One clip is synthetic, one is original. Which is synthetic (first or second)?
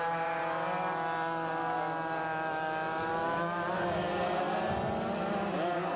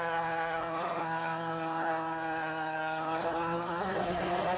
second